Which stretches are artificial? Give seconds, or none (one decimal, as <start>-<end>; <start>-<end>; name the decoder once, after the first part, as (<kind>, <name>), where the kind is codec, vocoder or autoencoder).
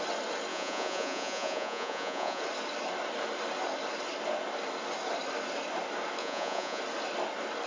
0.5-2.4 (vocoder, Vocos); 6.2-6.8